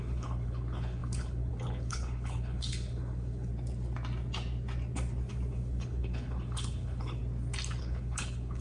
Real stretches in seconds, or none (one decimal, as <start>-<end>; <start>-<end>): 3.5-5.5; 7.2-7.8